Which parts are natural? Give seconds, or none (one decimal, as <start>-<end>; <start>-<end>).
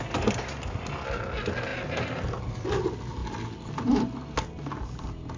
0.0-5.4